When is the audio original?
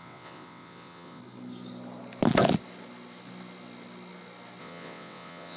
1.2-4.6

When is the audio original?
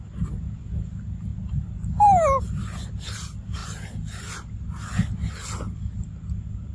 0.0-6.7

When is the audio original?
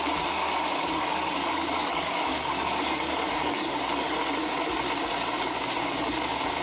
0.0-0.7; 4.2-6.6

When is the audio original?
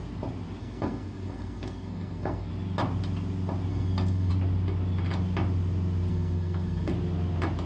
0.0-0.6; 2.5-3.7; 4.3-6.1; 6.9-7.7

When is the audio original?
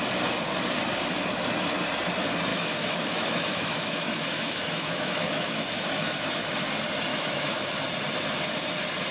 0.0-2.5; 6.3-7.1; 7.7-9.1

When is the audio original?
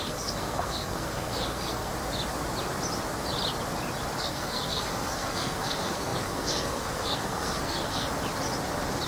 1.9-4.2; 8.1-9.1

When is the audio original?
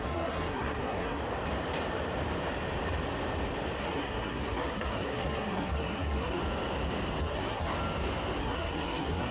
1.2-3.8; 6.4-7.2; 7.7-8.4